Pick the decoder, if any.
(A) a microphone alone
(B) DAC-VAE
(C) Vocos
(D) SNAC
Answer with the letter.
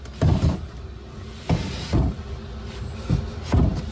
A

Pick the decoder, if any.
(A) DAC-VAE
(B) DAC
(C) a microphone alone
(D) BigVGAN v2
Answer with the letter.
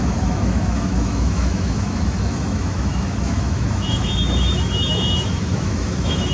A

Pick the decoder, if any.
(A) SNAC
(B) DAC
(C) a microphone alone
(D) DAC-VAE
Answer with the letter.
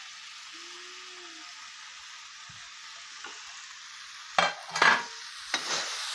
C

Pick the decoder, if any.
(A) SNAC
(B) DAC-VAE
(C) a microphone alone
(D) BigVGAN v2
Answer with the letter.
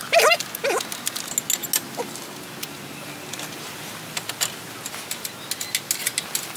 C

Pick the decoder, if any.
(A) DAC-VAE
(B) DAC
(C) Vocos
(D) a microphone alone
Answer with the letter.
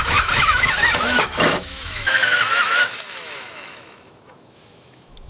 A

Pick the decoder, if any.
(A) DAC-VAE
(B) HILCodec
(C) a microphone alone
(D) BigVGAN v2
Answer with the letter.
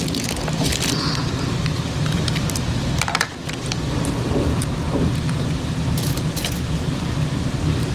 C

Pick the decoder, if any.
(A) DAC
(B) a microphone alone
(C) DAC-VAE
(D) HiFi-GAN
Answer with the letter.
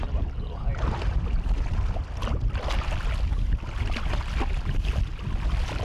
B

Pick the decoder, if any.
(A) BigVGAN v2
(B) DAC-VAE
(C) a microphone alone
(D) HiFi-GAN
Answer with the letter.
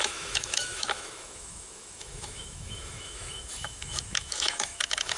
B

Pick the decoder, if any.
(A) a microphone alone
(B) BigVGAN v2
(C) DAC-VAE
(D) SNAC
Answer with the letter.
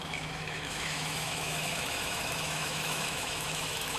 C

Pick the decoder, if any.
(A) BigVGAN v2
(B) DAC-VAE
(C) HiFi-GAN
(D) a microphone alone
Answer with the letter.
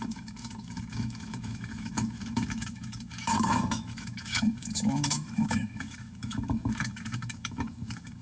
B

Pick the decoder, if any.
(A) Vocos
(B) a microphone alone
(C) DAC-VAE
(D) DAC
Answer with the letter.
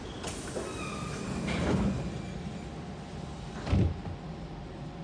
B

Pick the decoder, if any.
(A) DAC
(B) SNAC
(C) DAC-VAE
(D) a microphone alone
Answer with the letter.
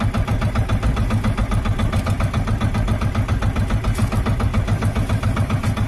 D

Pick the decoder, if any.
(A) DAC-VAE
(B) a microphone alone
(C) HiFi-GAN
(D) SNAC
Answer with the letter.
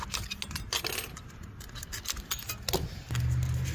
B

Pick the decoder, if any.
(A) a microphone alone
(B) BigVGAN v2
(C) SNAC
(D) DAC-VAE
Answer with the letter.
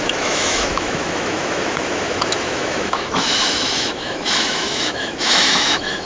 D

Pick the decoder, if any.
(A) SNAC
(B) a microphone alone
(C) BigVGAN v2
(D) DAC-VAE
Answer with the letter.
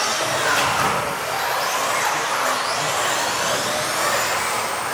B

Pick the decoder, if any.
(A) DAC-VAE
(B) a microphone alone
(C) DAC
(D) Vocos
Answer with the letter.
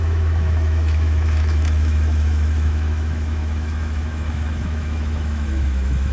A